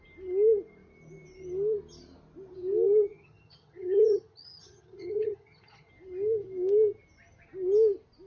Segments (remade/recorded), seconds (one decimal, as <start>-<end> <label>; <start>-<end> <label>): 0.0-3.1 recorded; 3.1-5.9 remade; 5.9-8.3 recorded